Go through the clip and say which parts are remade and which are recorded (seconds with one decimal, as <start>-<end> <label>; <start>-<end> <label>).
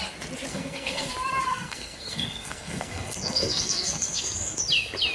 0.0-0.5 recorded; 0.5-1.1 remade; 1.1-1.5 recorded; 1.5-4.6 remade; 4.6-5.1 recorded